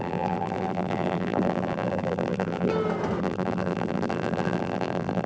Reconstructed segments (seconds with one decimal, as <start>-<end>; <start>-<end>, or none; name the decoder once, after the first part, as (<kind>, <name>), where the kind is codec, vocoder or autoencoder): 0.0-2.7 (vocoder, BigVGAN v2); 3.2-5.3